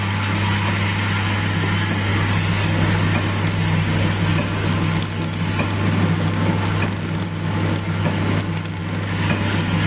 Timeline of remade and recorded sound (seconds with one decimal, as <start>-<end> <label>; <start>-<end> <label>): 0.0-9.9 recorded